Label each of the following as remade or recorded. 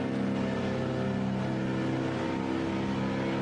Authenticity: recorded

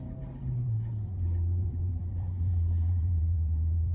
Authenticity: remade